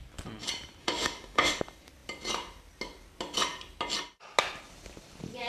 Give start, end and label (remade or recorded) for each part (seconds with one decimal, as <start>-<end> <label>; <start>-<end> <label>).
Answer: 0.0-0.8 recorded; 0.8-1.6 remade; 1.6-5.5 recorded